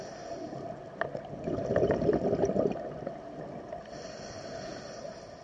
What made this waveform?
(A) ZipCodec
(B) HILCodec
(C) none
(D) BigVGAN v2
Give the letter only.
C